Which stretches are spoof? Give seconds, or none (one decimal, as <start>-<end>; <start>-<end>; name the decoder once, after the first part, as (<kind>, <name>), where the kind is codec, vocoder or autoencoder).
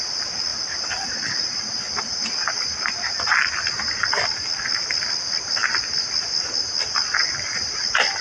none